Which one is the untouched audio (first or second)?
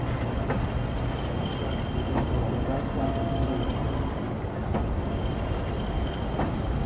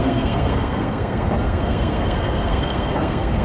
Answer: first